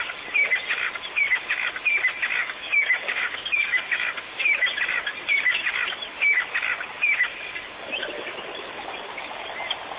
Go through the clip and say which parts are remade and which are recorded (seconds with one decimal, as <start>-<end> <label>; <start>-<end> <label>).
0.0-2.4 recorded; 2.4-4.2 remade; 4.2-10.0 recorded